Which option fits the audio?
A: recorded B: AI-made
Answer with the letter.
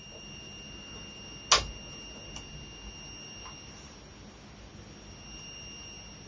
A